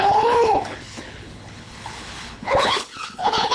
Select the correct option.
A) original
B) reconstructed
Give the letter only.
B